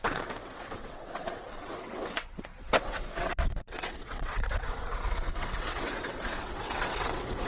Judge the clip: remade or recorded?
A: remade